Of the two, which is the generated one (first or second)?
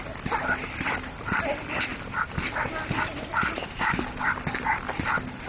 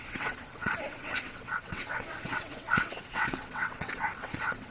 second